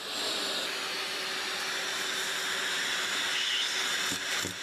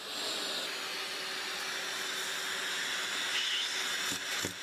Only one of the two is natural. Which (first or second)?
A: second